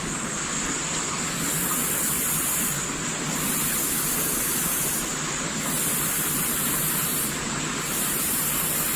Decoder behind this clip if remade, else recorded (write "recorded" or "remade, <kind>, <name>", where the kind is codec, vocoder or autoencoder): recorded